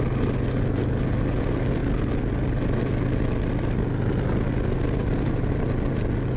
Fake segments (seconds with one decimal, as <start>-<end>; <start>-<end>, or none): none